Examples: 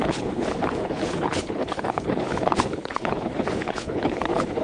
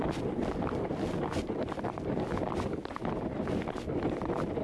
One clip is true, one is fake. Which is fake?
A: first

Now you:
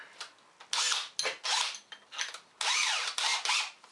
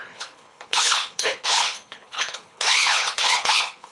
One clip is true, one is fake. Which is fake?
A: second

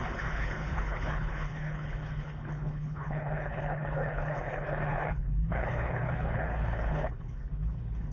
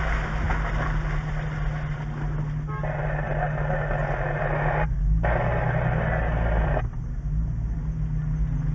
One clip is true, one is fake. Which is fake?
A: first